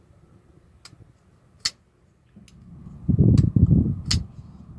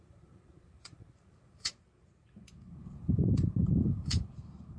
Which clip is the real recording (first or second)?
first